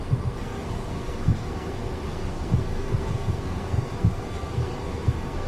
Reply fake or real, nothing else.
fake